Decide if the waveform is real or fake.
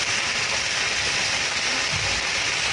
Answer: real